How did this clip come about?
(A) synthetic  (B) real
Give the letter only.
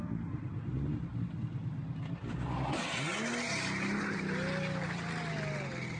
B